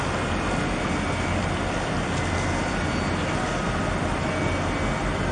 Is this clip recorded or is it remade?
recorded